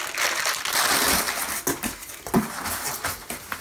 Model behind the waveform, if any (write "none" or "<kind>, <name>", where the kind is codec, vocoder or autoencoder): none